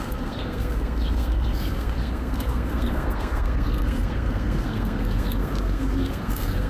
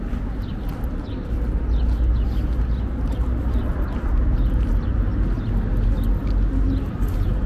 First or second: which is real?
second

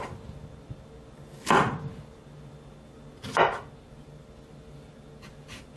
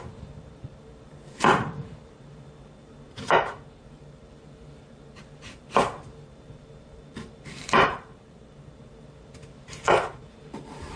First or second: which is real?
first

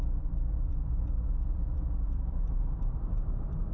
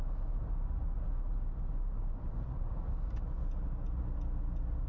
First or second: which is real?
second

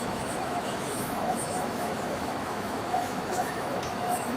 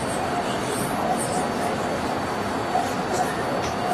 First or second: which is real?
second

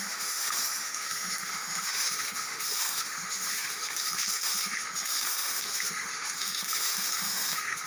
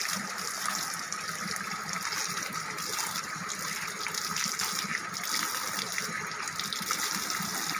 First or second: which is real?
second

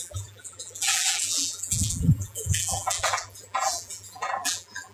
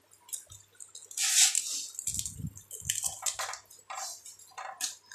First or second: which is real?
second